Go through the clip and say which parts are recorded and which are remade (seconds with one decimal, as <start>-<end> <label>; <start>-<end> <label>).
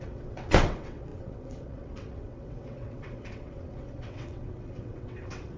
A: 0.0-5.6 remade